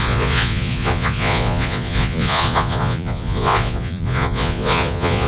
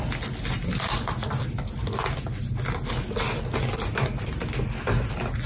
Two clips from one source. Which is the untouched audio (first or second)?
second